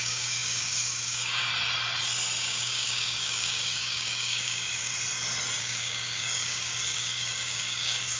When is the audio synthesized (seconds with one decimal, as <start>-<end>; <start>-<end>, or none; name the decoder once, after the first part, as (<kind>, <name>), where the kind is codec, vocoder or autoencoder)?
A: 0.0-1.5 (codec, DAC); 2.4-4.9; 5.6-8.2